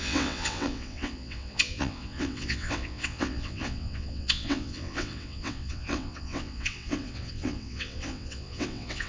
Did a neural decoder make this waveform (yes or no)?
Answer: yes